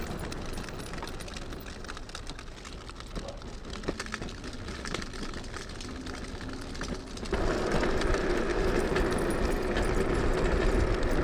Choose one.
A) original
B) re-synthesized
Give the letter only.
A